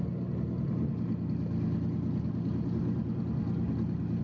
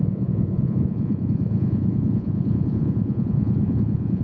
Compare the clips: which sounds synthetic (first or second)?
second